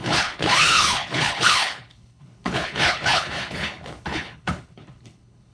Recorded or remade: remade